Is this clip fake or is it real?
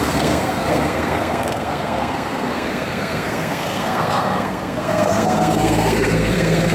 fake